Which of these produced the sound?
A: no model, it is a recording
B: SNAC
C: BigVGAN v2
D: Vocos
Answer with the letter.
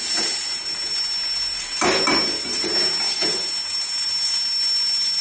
A